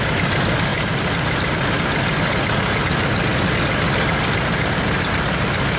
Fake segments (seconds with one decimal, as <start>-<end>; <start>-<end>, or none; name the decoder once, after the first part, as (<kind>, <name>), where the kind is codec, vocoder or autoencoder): none